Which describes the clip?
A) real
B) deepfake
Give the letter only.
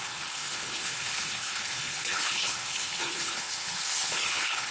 B